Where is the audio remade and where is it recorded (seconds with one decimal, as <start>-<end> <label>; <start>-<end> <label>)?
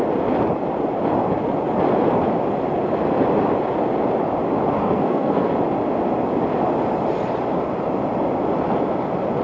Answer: 0.0-4.8 recorded; 4.8-5.5 remade; 5.5-9.4 recorded